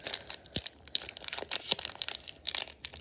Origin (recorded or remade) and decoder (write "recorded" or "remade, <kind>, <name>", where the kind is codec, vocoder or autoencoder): remade, vocoder, BigVGAN v2